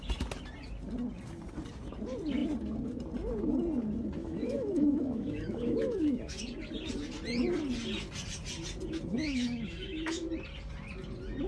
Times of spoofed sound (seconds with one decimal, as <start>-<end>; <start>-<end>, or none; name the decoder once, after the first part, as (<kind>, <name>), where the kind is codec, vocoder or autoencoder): 4.2-6.4 (autoencoder, DAC-VAE); 9.1-10.3